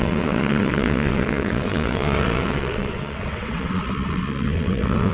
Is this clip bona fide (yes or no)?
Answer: no